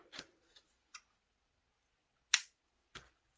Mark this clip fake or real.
real